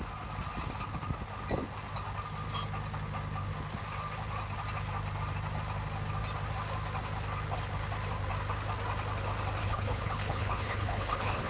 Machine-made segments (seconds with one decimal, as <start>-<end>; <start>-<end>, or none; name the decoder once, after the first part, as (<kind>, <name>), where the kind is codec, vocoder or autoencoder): 9.6-11.5 (codec, HILCodec)